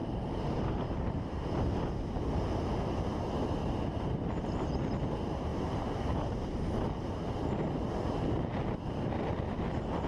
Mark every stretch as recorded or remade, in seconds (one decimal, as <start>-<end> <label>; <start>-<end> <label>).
0.0-1.4 remade; 1.4-5.5 recorded; 5.5-7.4 remade; 7.4-10.1 recorded